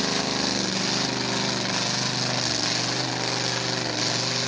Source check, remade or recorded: recorded